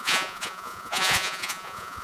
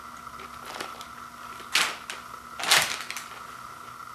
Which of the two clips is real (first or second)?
second